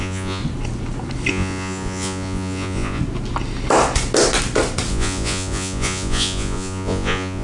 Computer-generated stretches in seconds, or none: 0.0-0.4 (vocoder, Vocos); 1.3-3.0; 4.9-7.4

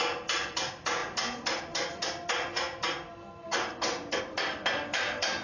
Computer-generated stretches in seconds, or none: none

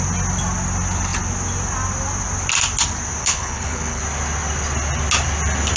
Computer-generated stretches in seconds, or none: 3.2-4.0 (codec, HILCodec)

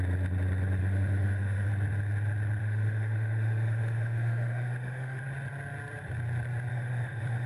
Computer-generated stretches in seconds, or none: 0.8-1.7 (autoencoder, DAC-VAE); 2.6-5.2; 6.7-7.5

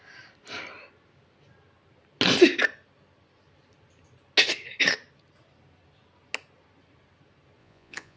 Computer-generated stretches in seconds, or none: 7.6-8.2 (vocoder, Vocos)

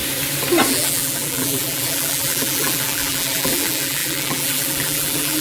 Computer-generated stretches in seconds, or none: 0.7-5.4 (vocoder, BigVGAN v2)

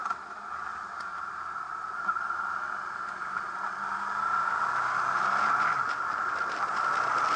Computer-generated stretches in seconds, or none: 1.1-1.7 (vocoder, BigVGAN v2)